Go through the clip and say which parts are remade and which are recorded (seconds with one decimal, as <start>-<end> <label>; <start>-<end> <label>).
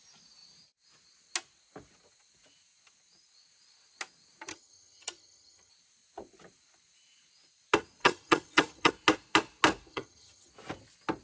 0.0-4.5 recorded; 4.5-5.7 remade; 5.7-8.0 recorded; 8.0-8.9 remade; 8.9-9.9 recorded; 9.9-10.5 remade; 10.5-11.2 recorded